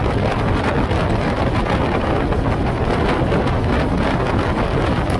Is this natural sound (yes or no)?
yes